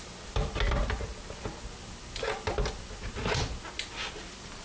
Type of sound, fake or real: real